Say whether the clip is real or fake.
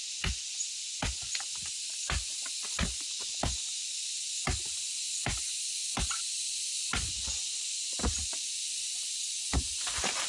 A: real